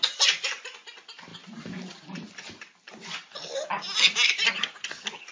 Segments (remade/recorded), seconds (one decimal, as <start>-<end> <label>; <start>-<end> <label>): 0.0-5.3 recorded